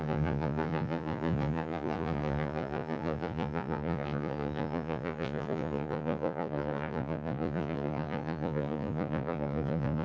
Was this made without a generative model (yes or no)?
no